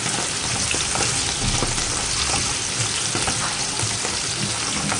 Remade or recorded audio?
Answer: recorded